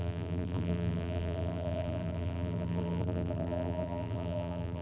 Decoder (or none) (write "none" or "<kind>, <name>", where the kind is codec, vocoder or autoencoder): vocoder, BigVGAN v2